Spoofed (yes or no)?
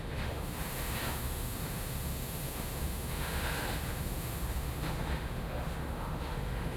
yes